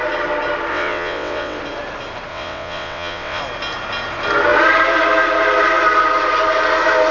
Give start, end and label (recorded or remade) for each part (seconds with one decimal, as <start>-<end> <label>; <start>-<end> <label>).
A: 0.0-0.7 recorded; 0.7-1.6 remade; 1.6-2.3 recorded; 2.3-3.4 remade; 3.4-7.1 recorded